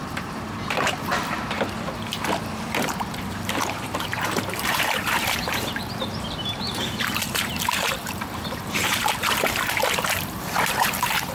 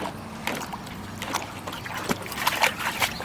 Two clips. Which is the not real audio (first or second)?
first